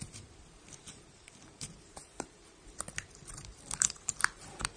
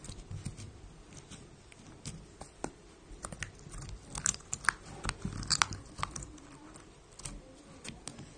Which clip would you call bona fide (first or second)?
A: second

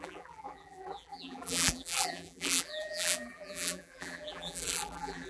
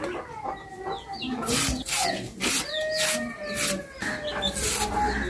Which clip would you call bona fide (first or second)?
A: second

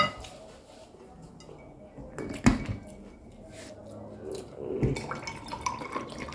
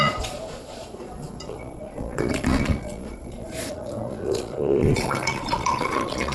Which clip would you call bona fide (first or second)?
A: first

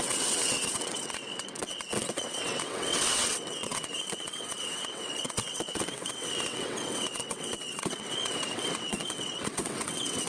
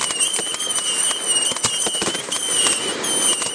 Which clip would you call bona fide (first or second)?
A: second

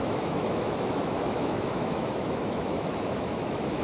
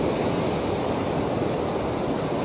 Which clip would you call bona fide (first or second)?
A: second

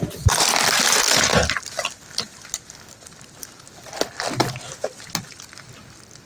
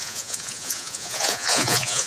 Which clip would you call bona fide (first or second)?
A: first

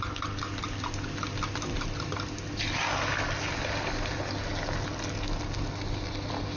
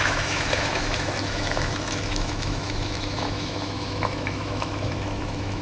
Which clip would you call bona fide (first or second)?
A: first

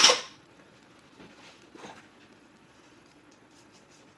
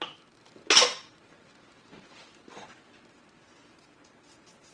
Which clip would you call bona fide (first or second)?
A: second